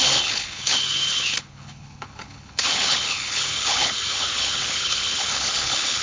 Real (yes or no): no